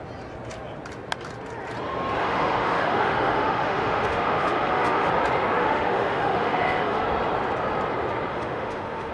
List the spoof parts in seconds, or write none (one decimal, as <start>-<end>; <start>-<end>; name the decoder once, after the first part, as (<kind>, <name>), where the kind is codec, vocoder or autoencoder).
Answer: 2.2-5.1 (autoencoder, DAC-VAE); 5.6-7.0; 8.3-9.1